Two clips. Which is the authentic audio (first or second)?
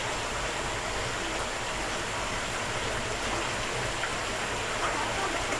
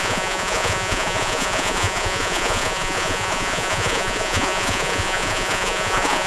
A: first